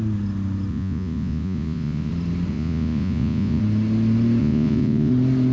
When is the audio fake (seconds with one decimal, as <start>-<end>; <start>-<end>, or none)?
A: 0.7-2.1; 2.5-3.6; 4.4-5.1